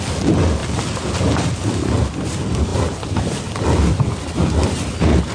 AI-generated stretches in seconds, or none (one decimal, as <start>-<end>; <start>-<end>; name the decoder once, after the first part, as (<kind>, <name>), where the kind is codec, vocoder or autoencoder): none